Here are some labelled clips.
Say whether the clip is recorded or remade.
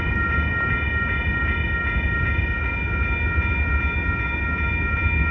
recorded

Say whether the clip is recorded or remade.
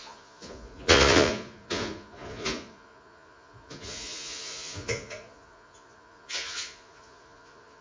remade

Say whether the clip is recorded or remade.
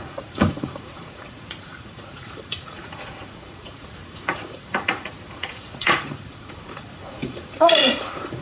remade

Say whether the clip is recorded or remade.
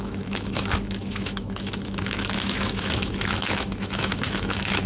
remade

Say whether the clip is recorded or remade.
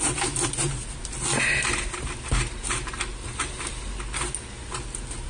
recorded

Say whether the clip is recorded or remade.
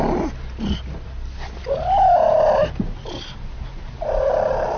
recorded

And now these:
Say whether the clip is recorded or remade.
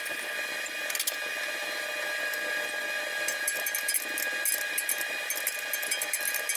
recorded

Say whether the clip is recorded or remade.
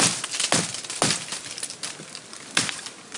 recorded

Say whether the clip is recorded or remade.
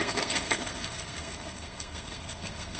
remade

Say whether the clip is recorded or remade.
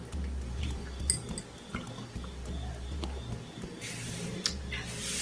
recorded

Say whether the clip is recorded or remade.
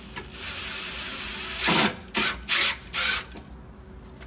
recorded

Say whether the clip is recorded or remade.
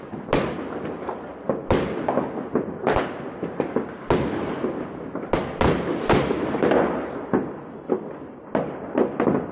recorded